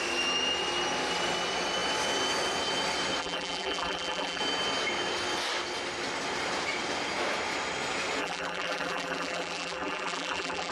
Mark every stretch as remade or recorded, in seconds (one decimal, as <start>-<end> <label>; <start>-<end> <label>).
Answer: 0.0-3.2 recorded; 3.2-4.4 remade; 4.4-8.2 recorded; 8.2-10.7 remade